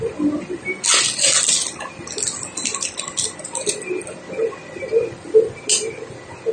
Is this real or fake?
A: real